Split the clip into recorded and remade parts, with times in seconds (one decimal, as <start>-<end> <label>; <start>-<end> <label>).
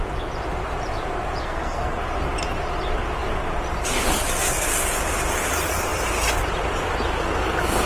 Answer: 0.0-1.4 recorded; 1.4-2.0 remade; 2.0-7.9 recorded